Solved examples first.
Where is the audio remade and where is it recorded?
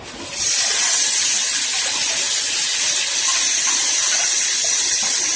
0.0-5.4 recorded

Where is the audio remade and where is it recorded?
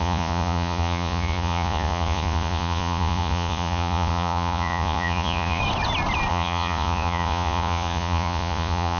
0.0-5.6 remade; 5.6-6.3 recorded; 6.3-9.0 remade